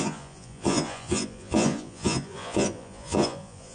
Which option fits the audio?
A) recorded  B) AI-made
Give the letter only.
B